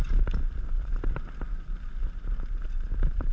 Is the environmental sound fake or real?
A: real